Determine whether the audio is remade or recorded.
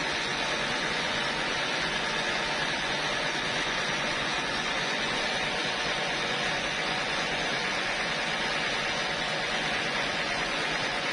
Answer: remade